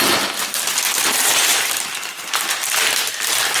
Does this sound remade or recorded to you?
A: recorded